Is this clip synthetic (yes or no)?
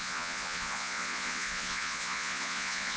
yes